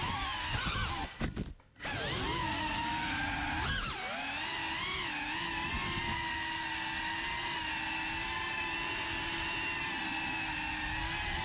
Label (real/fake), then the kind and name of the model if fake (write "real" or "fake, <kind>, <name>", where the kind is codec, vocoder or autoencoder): real